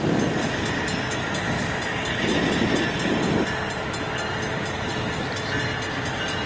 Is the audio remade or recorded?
recorded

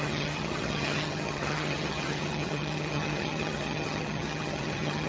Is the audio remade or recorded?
remade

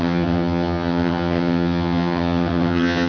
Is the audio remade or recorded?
remade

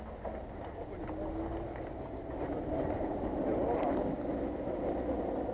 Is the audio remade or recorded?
recorded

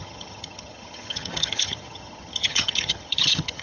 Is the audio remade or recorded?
remade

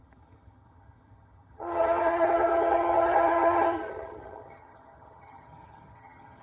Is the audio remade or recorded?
remade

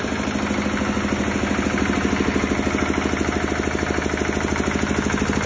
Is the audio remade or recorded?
recorded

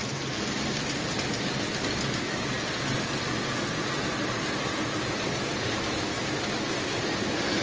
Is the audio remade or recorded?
recorded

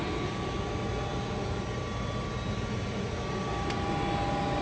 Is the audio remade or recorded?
recorded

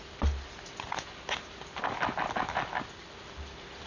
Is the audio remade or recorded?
recorded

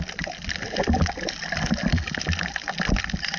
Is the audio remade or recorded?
recorded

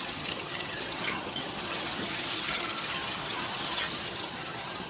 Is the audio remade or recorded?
remade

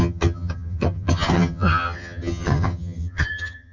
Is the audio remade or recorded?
remade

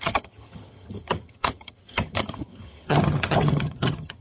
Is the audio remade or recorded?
remade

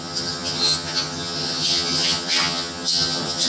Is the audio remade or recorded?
remade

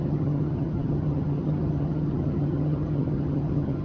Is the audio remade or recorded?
remade